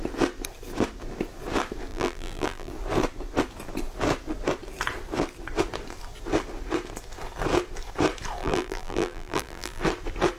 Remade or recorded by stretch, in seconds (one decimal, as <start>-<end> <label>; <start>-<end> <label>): 0.0-1.9 recorded; 1.9-2.7 remade; 2.7-8.4 recorded; 8.4-9.8 remade; 9.8-10.4 recorded